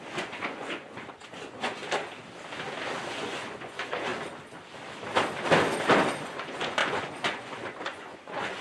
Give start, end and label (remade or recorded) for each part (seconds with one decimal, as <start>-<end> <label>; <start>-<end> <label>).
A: 0.0-1.8 remade; 1.8-3.1 recorded; 3.1-4.1 remade; 4.1-6.2 recorded; 6.2-8.6 remade